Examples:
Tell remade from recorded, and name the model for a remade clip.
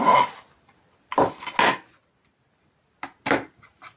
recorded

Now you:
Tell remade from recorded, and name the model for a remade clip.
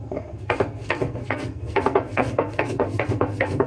remade, codec, SNAC